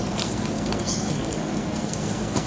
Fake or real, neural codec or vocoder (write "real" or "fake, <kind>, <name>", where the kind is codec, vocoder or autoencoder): fake, codec, SNAC